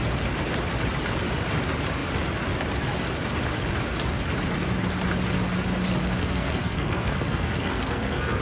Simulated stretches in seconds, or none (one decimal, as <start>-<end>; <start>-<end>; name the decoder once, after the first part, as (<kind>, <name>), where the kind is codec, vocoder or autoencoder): 6.2-8.4 (codec, SNAC)